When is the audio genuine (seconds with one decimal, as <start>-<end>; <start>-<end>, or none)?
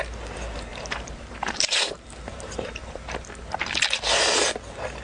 0.0-0.7; 3.2-5.0